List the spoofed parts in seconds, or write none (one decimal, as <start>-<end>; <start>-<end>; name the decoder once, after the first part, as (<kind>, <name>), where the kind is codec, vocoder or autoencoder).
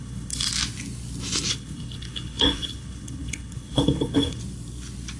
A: 0.0-0.5 (codec, HILCodec); 1.5-4.4